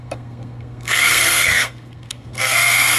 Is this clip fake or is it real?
fake